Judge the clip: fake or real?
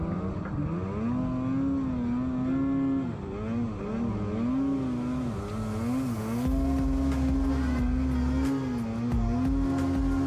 real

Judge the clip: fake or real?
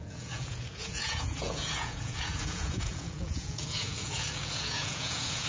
fake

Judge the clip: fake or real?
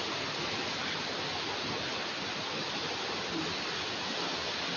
real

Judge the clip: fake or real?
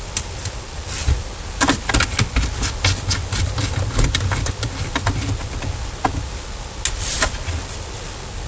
real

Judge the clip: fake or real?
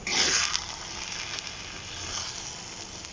real